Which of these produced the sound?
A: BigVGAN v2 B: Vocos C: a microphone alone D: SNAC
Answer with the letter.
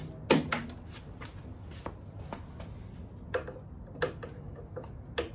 C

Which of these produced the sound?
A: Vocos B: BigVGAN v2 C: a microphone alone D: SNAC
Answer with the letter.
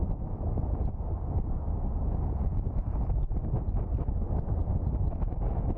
B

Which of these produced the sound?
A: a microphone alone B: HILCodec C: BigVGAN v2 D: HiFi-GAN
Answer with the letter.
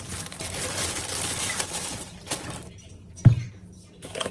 A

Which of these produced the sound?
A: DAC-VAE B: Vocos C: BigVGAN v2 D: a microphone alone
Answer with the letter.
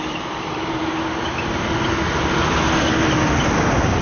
C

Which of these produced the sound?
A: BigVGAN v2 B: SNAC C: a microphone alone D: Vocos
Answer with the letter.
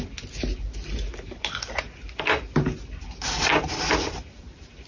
C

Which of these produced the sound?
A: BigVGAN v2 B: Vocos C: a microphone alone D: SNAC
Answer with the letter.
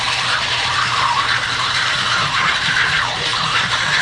A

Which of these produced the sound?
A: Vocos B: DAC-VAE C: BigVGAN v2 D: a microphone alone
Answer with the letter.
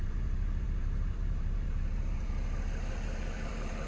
C